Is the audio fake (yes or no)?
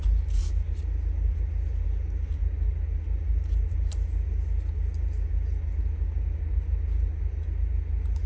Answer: no